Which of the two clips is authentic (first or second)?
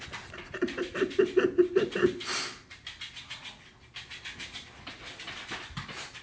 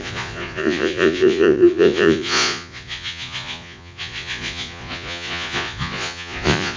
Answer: first